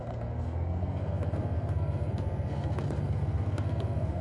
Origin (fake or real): fake